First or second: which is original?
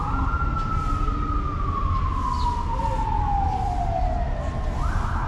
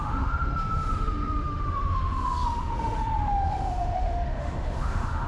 first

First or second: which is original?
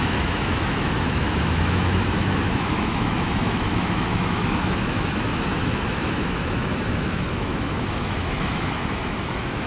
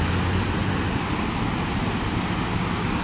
second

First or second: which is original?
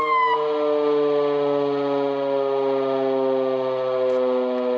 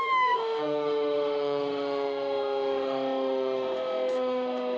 first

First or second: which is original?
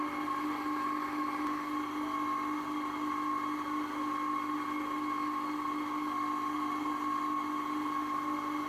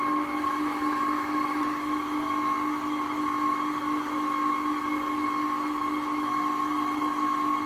first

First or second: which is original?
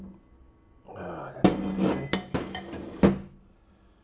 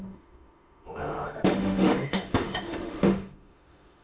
first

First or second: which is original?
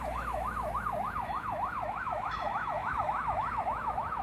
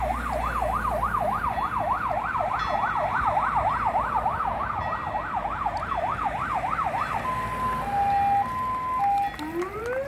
second